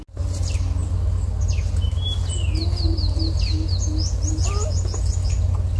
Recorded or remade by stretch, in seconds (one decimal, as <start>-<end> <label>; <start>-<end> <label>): 0.0-5.8 recorded